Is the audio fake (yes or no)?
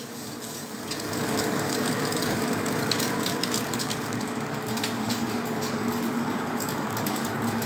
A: yes